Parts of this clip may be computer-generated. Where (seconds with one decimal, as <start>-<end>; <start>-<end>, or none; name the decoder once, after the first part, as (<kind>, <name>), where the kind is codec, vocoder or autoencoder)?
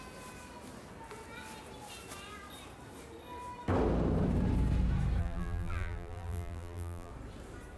5.2-7.1 (vocoder, BigVGAN v2)